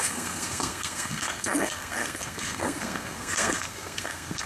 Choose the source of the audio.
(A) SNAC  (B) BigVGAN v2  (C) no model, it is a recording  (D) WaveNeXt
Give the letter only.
A